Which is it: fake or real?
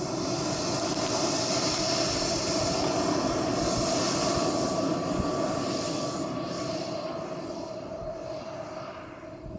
real